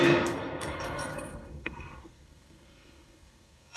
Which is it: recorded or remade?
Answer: remade